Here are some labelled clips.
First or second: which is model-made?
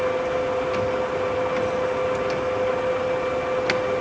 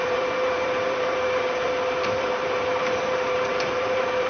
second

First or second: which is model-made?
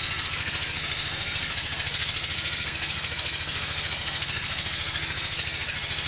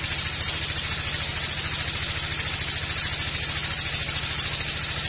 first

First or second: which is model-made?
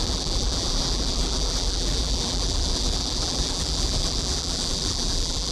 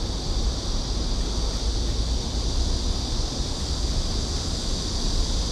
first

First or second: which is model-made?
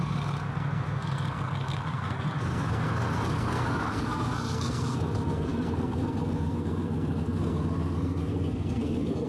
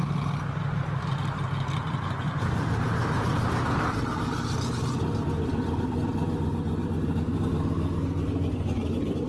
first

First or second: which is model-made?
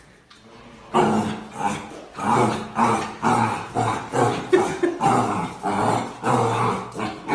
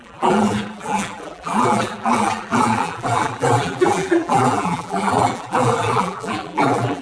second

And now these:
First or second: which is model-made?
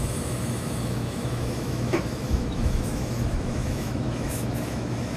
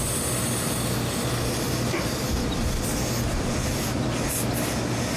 first